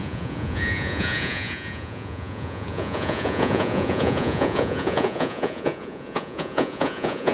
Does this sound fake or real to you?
fake